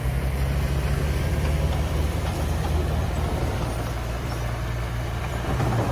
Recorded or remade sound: remade